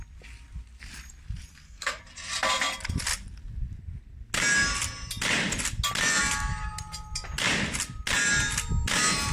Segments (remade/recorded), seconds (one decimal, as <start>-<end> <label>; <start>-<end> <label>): 0.0-1.5 recorded; 1.5-2.0 remade; 2.0-9.3 recorded

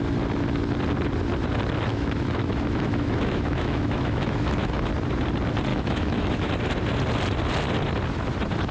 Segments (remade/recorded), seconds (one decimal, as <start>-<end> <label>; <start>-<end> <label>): 0.0-1.9 recorded; 1.9-4.9 remade; 4.9-5.7 recorded; 5.7-6.5 remade; 6.5-8.7 recorded

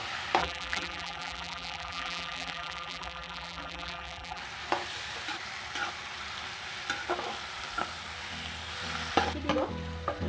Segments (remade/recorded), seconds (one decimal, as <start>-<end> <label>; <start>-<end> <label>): 0.0-0.4 recorded; 0.4-4.4 remade; 4.4-10.3 recorded

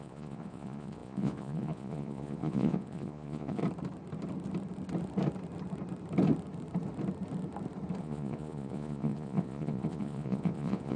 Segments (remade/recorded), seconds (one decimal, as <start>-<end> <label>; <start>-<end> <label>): 0.0-3.6 remade; 3.6-8.0 recorded; 8.0-11.0 remade

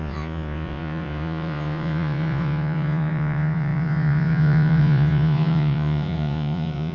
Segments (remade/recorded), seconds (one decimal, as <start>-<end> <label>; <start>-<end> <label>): 0.0-6.9 remade

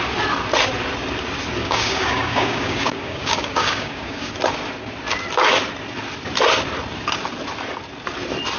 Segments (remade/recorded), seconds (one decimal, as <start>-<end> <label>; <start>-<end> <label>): 0.0-1.6 recorded; 1.6-4.3 remade; 4.3-8.6 recorded